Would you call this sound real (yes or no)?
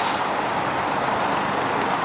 yes